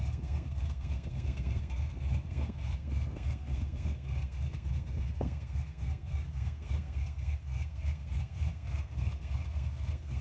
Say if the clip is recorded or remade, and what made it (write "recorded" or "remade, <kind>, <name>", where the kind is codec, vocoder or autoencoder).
remade, codec, SNAC